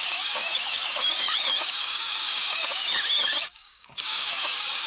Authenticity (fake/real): fake